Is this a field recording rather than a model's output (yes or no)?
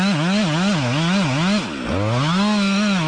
yes